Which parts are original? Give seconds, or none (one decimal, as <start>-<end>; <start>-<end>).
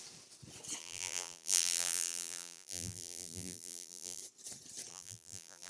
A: 0.0-0.8; 4.2-4.9